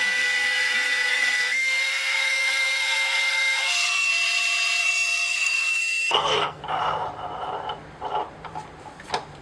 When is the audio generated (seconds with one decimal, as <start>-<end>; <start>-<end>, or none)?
0.0-4.1; 4.8-6.6